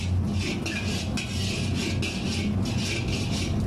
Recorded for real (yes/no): yes